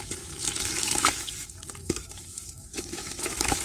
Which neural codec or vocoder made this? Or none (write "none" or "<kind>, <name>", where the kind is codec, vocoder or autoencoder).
autoencoder, DAC-VAE